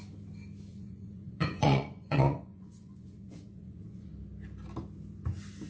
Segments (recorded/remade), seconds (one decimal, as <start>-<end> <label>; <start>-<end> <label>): 0.0-0.7 recorded; 0.7-4.1 remade; 4.1-5.7 recorded